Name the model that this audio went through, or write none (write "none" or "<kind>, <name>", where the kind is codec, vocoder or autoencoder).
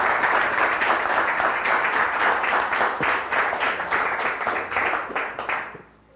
none